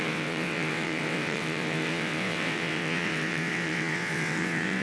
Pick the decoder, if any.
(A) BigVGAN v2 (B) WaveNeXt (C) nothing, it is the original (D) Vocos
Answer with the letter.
B